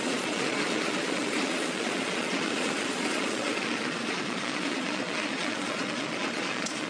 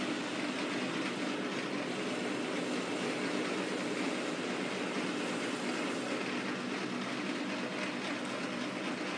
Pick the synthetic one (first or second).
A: first